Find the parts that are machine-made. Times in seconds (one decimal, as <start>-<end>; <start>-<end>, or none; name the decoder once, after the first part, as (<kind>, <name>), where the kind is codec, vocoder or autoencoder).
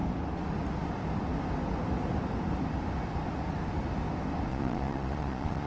4.5-5.7 (vocoder, Vocos)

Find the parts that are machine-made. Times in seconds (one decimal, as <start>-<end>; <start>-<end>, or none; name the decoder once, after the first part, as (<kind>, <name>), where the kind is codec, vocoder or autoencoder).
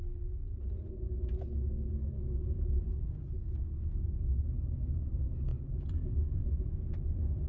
2.4-3.2 (vocoder, Vocos); 5.5-6.0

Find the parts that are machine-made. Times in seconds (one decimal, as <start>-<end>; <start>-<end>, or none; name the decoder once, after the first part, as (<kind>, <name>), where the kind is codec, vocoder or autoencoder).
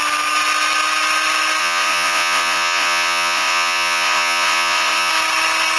1.6-5.1 (vocoder, Vocos)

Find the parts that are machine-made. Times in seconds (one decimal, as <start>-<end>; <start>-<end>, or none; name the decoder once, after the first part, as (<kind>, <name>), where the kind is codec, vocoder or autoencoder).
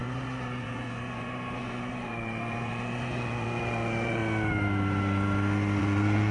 0.0-4.2 (vocoder, Vocos); 5.8-6.3